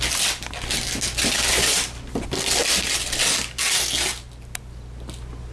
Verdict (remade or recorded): recorded